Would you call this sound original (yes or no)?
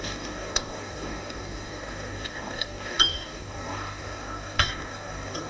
no